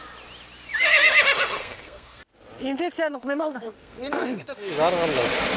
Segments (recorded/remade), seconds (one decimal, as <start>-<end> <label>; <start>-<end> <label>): 0.0-1.6 recorded; 1.6-2.2 remade; 2.2-3.1 recorded; 3.1-4.7 remade; 4.7-5.6 recorded